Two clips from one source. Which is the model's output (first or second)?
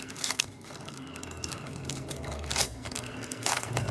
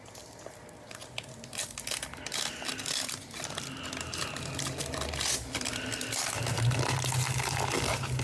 first